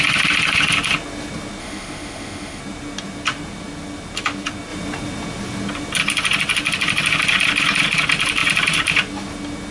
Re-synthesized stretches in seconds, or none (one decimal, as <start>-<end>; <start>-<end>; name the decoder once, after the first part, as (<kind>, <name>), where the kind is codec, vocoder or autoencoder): 1.6-2.6 (autoencoder, DAC-VAE)